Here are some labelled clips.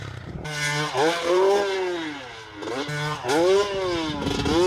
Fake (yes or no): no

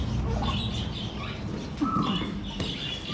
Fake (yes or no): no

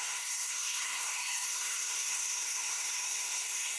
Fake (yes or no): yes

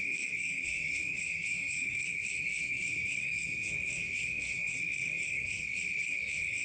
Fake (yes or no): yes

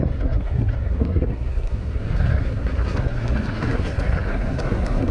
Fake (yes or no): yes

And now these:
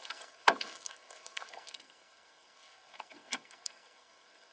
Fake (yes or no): yes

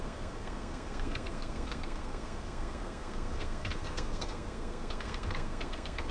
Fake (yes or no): yes